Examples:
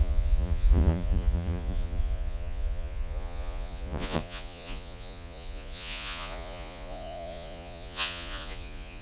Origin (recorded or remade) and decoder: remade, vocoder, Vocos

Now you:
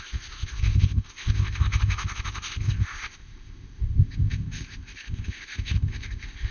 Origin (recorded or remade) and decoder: remade, codec, ZipCodec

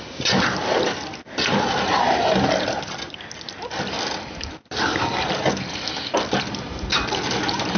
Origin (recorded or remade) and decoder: recorded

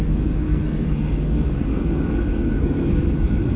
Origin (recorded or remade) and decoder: remade, codec, SNAC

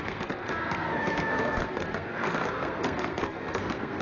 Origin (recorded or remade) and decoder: remade, codec, SNAC